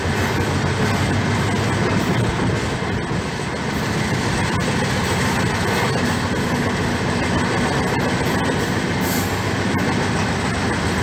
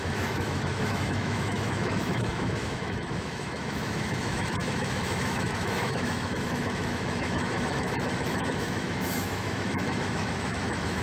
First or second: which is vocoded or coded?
second